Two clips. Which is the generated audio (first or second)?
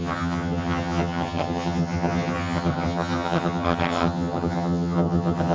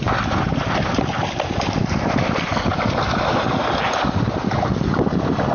first